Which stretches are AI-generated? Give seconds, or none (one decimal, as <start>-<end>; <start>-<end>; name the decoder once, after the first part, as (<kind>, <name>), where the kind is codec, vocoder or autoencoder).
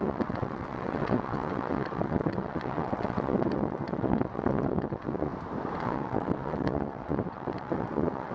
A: 0.0-5.3 (vocoder, WaveNeXt); 5.8-8.3